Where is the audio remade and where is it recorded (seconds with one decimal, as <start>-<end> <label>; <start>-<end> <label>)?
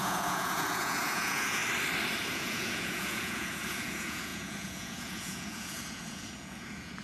0.0-1.6 remade; 1.6-2.3 recorded; 2.3-7.0 remade